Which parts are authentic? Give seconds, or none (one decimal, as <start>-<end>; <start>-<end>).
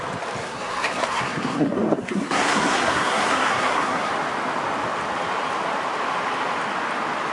0.0-0.4; 4.1-7.3